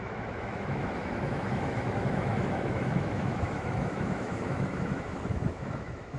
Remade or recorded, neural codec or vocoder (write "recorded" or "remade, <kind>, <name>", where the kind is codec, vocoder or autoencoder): remade, autoencoder, DAC-VAE